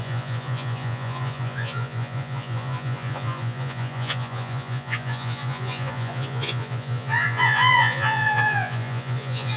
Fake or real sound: fake